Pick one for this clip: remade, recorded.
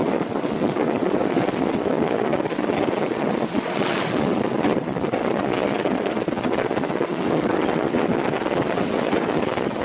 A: remade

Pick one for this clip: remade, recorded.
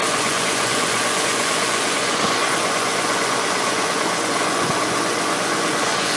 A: remade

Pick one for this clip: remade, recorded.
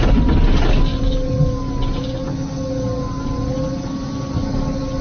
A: recorded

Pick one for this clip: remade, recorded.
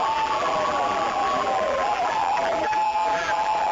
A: remade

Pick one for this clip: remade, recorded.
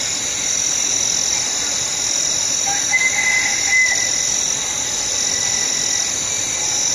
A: recorded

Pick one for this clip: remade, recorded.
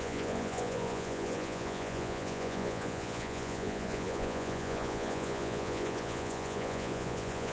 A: remade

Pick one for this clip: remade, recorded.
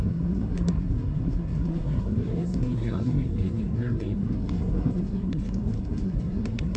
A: remade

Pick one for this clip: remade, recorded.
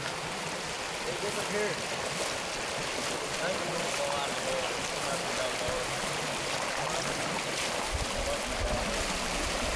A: recorded